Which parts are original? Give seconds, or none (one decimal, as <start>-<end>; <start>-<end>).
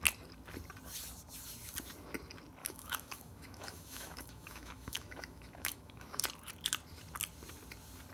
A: 0.0-2.6; 6.2-8.1